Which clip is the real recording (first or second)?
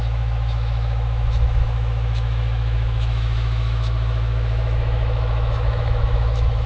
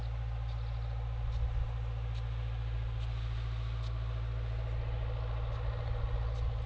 second